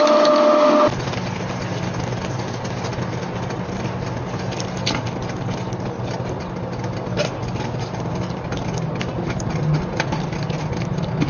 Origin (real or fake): real